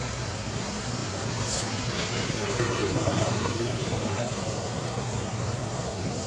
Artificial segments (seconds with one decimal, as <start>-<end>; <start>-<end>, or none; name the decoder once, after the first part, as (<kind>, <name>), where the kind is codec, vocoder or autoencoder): 0.0-6.3 (codec, SNAC)